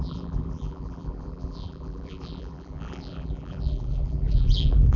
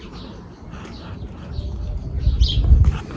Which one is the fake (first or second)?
first